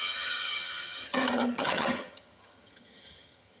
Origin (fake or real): fake